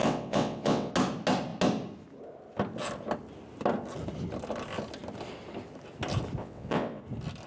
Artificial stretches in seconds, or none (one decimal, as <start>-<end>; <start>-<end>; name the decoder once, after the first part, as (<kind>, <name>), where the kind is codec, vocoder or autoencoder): 0.0-0.9 (vocoder, WaveNeXt); 6.4-7.0